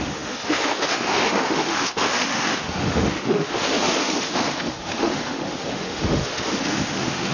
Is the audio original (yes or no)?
no